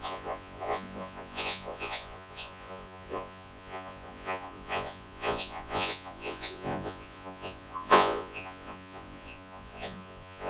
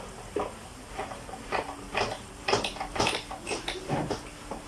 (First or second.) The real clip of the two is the second